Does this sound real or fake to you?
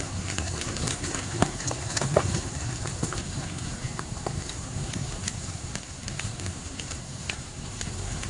fake